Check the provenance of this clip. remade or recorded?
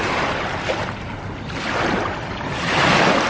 recorded